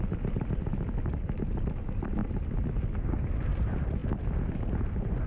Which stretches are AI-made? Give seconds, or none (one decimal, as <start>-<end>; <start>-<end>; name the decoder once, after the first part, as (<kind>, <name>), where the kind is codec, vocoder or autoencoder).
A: 0.0-2.2 (vocoder, BigVGAN v2); 3.3-5.3